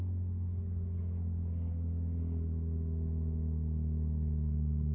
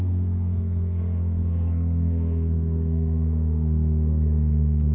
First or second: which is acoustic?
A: first